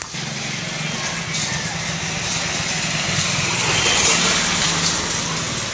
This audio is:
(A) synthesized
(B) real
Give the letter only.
B